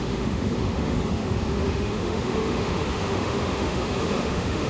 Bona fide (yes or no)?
no